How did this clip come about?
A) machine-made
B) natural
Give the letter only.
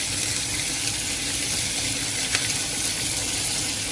B